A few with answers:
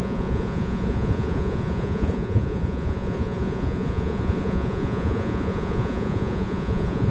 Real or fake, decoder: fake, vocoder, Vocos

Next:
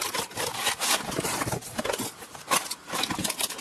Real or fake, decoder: real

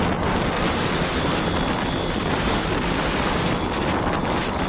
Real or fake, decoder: real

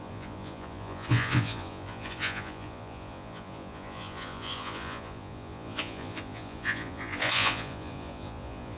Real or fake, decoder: fake, vocoder, Vocos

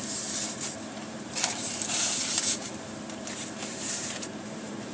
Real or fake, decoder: fake, vocoder, BigVGAN v2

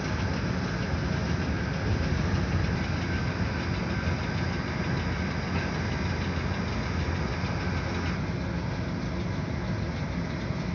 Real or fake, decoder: real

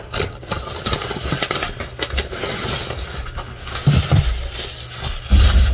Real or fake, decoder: real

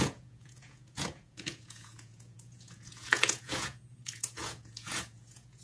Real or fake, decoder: fake, vocoder, Vocos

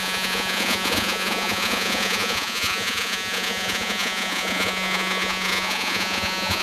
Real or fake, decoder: fake, vocoder, Vocos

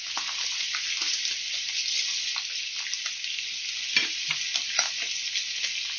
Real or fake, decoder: real